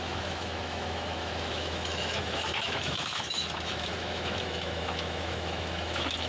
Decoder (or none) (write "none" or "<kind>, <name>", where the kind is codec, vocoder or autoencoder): autoencoder, DAC-VAE